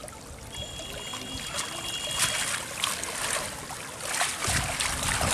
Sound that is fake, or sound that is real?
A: real